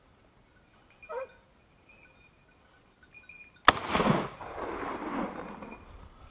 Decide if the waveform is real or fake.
real